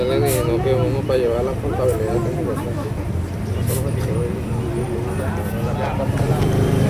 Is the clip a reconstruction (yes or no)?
no